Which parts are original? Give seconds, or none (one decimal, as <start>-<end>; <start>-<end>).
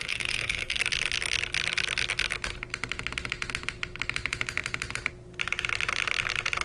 0.8-6.6